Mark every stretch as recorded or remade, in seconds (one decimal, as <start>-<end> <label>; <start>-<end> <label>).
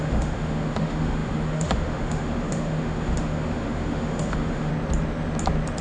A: 0.0-4.7 remade; 4.7-5.8 recorded